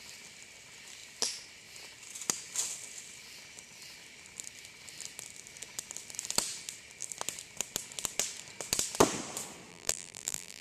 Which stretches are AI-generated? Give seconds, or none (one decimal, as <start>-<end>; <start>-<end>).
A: 9.7-10.6